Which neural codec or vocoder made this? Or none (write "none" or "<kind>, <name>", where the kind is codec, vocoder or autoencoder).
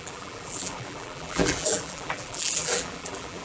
vocoder, BigVGAN v2